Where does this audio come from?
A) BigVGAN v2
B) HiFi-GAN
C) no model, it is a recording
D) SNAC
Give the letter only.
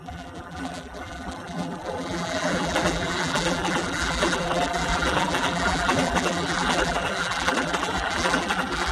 A